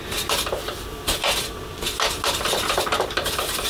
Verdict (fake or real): real